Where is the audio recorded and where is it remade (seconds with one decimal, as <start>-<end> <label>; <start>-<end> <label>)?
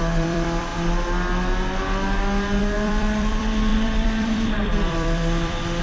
0.0-0.7 remade; 0.7-2.6 recorded; 2.6-5.8 remade